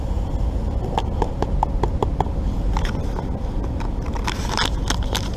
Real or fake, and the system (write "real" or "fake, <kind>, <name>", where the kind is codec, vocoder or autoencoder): real